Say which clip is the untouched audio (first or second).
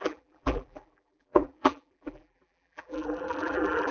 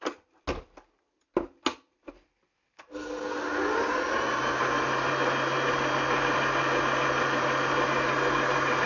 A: second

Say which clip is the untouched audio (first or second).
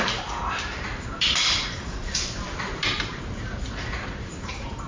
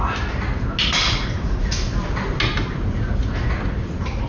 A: second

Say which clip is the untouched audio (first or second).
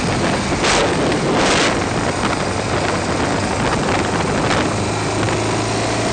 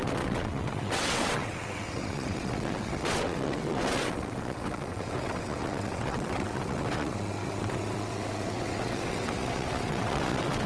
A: first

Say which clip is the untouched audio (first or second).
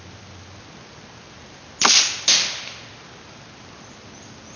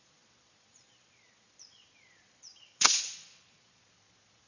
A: first